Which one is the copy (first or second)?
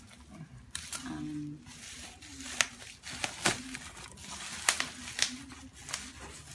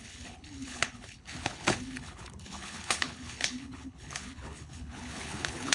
second